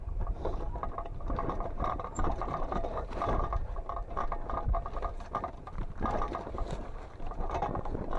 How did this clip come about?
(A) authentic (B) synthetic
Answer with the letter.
B